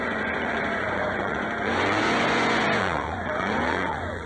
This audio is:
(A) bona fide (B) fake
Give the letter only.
B